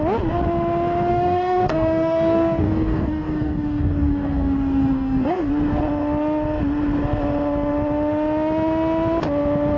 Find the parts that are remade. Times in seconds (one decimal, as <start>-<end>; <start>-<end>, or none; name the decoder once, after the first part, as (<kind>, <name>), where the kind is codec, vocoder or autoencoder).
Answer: 1.1-5.5 (codec, DAC)